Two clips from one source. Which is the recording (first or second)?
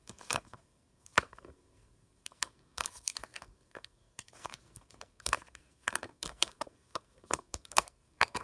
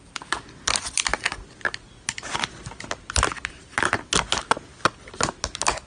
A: second